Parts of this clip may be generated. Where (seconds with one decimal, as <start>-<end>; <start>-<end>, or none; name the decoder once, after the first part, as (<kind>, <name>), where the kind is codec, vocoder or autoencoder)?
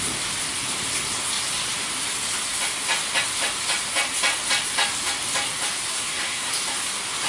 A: 5.9-6.5 (codec, SNAC)